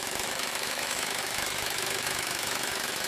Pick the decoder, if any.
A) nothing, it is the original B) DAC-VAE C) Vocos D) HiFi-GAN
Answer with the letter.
B